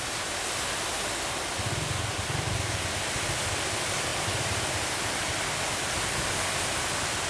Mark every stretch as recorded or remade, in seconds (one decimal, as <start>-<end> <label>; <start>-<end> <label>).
0.0-4.1 recorded; 4.1-5.3 remade; 5.3-7.3 recorded